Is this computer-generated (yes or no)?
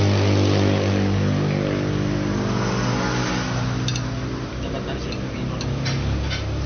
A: no